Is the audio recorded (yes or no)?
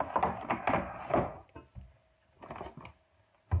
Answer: yes